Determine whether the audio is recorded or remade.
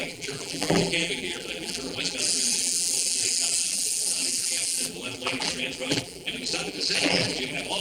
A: remade